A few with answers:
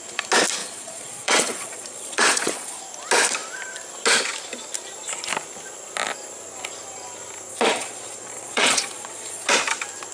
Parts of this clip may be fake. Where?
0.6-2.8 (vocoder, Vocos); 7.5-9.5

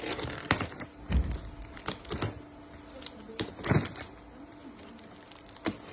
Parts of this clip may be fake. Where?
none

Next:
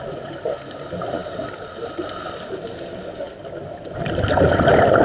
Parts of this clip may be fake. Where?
none